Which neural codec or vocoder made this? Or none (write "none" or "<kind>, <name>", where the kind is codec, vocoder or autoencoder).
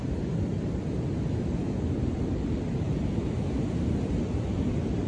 none